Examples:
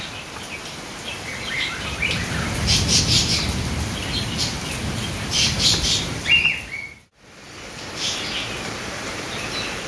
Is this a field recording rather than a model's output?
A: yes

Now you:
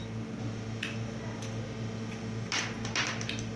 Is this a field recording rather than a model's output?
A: yes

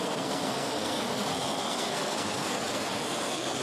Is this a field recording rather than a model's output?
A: no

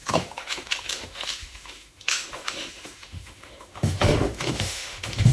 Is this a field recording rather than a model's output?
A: no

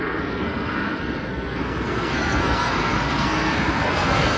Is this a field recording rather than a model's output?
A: no